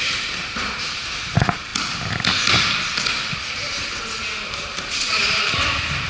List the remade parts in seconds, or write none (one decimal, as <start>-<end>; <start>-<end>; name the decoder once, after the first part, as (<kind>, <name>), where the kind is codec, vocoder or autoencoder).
0.0-1.7 (vocoder, BigVGAN v2); 3.1-3.7; 5.1-6.1